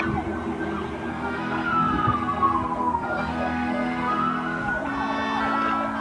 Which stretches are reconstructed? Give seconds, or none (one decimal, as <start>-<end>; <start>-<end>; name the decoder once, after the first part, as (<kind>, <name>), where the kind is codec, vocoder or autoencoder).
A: 1.1-4.7 (codec, SNAC)